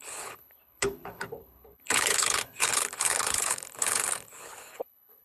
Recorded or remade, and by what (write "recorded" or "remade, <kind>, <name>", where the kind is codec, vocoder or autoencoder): remade, codec, HILCodec